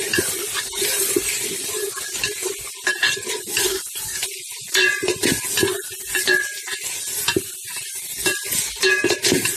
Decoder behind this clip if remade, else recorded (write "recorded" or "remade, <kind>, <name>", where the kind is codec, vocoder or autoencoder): recorded